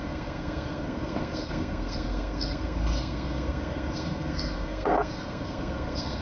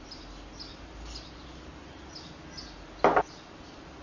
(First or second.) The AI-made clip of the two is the first